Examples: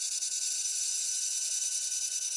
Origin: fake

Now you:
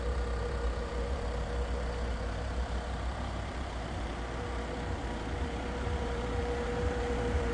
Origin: fake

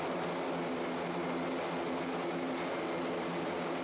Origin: real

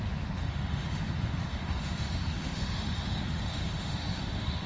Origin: fake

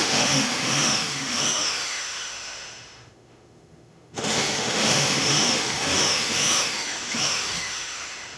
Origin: fake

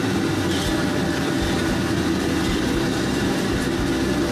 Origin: real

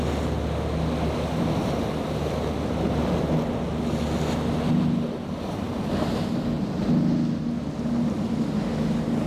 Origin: real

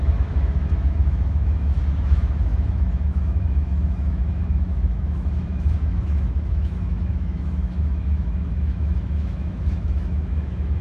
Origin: fake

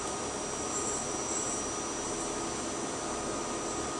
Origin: real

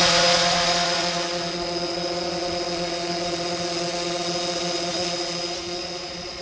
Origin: fake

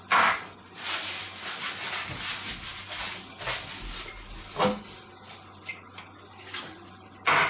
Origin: real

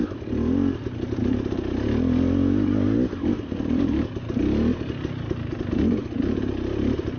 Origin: real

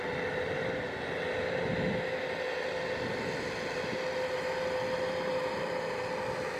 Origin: real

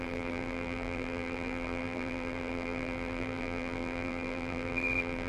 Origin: fake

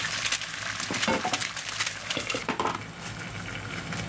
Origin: real